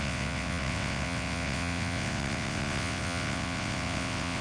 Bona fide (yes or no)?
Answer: no